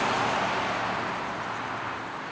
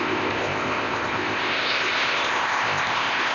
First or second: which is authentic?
first